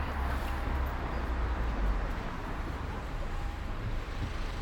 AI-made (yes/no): yes